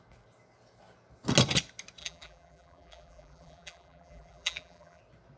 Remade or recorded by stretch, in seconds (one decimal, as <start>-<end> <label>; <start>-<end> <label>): 0.0-2.0 recorded; 2.0-5.0 remade; 5.0-5.4 recorded